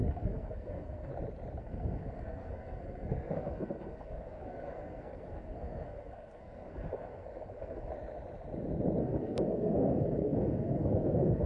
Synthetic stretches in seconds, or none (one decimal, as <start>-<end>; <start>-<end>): 0.0-1.1; 1.6-7.9; 9.0-11.5